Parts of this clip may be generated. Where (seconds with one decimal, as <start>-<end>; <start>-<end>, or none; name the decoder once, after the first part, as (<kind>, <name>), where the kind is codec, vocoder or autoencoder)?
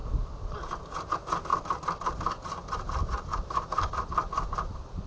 1.5-4.6 (vocoder, BigVGAN v2)